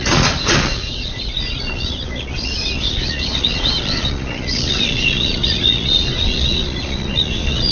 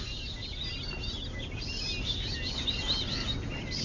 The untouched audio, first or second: second